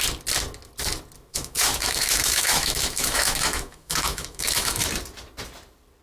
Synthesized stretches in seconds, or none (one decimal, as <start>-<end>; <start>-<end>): 1.3-4.9

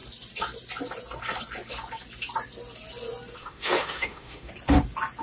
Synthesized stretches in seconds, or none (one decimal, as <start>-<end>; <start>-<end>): 3.4-4.5